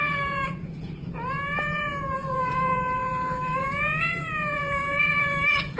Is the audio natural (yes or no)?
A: no